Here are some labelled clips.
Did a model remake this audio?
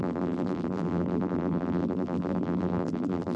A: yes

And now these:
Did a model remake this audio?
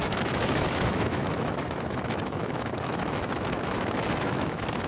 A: yes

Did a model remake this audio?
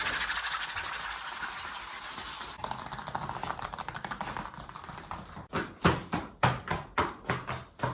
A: no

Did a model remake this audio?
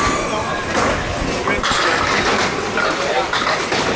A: no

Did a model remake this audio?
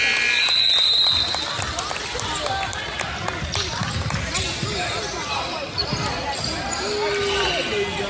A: no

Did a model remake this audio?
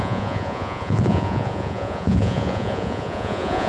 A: yes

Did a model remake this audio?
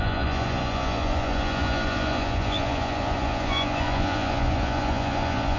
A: yes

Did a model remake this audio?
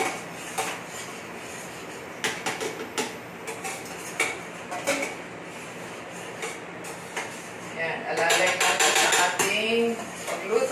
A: no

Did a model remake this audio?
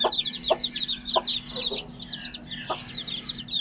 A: no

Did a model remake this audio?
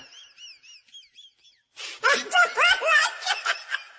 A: no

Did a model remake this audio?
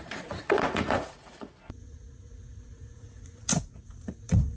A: yes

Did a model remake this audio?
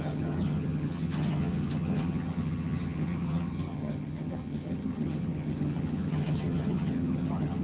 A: yes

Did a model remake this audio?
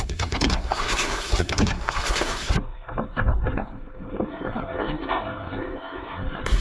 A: yes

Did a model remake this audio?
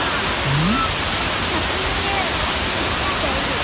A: no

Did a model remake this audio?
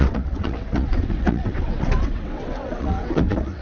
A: yes